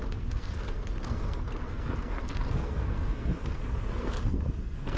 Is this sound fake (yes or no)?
yes